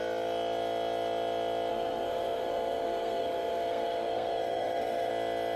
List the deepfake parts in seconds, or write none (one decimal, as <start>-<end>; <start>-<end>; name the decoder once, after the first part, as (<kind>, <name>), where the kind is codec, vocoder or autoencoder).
1.7-5.1 (codec, SNAC)